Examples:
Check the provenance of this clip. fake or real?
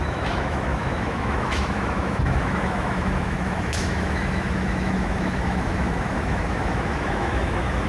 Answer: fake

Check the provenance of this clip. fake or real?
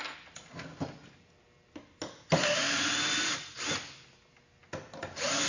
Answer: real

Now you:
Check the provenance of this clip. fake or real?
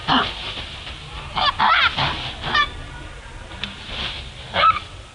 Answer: real